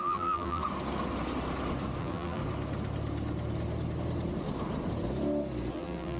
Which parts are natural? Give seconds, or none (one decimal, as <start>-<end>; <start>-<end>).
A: 0.6-2.0; 2.4-5.7